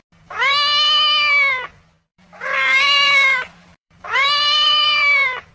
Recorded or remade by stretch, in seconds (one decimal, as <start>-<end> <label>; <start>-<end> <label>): 0.0-2.1 recorded; 2.1-5.5 remade